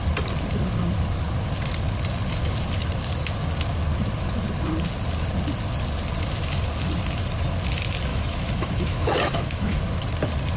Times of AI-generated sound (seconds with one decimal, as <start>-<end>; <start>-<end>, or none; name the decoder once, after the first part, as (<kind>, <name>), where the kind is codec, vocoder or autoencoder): 8.1-9.8 (autoencoder, DAC-VAE)